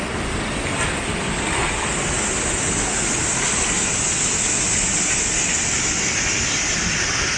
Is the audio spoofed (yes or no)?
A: no